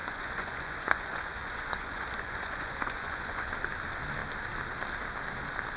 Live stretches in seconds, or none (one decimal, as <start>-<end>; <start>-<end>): 3.5-5.8